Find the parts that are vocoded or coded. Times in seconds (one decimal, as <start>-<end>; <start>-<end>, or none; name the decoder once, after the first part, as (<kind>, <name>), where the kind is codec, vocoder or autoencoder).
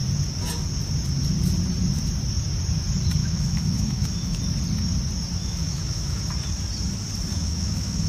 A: 3.2-4.4 (autoencoder, DAC-VAE); 5.4-6.2; 7.3-8.1